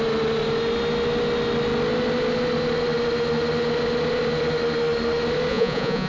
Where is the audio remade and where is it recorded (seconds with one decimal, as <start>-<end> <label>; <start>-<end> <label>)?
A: 0.0-5.5 recorded; 5.5-6.1 remade